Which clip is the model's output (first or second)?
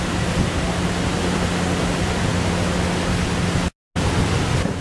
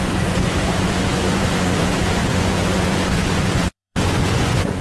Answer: second